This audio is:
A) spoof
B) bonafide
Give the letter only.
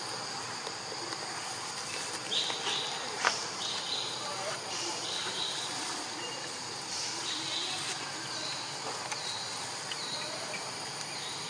B